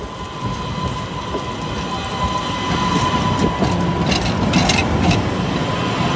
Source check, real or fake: real